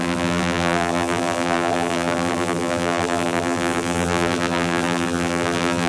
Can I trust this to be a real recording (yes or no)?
no